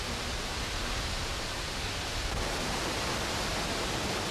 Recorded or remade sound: recorded